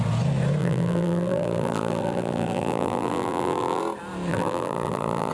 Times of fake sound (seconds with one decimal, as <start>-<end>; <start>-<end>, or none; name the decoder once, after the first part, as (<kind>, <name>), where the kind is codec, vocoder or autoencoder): 0.6-3.8 (vocoder, BigVGAN v2); 4.3-5.3